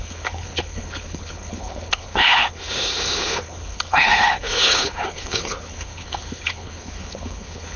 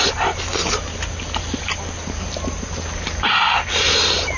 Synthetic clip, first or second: first